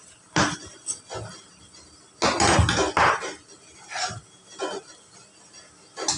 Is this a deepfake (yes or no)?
no